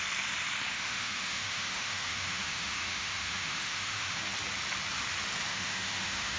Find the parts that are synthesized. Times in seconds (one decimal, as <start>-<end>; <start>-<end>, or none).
0.7-4.2; 5.5-6.4